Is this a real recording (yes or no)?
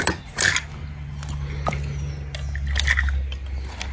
yes